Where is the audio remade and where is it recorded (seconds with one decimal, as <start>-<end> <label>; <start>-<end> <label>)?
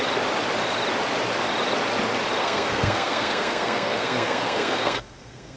0.0-2.4 recorded; 2.4-5.6 remade